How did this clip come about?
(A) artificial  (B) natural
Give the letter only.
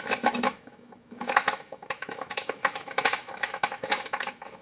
A